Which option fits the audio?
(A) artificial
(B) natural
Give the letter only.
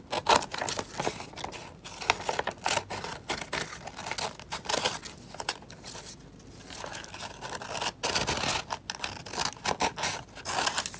B